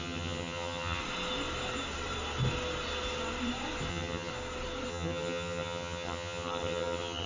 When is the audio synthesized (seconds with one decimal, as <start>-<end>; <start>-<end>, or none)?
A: 0.0-1.0; 3.9-4.3; 4.9-7.3